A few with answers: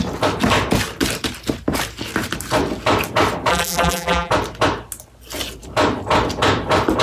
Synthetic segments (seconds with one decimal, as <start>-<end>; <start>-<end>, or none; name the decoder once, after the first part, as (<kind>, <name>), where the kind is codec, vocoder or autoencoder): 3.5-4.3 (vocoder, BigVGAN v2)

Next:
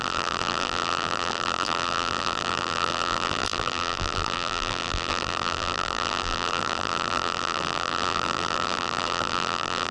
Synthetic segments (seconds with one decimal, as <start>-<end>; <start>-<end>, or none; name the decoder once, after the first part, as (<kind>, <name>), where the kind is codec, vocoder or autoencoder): 0.0-9.9 (vocoder, BigVGAN v2)

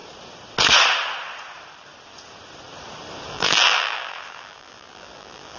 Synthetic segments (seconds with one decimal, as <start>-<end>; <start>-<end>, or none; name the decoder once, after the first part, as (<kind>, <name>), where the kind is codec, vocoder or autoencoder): 3.3-5.6 (vocoder, BigVGAN v2)

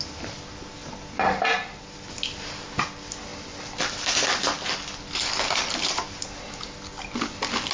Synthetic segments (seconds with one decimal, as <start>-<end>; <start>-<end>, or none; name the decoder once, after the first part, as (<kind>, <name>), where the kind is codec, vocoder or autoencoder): none